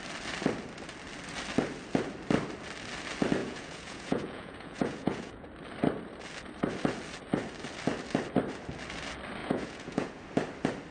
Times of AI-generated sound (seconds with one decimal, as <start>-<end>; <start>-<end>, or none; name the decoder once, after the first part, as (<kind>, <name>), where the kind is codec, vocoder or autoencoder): 3.4-5.5 (vocoder, Vocos); 9.4-10.1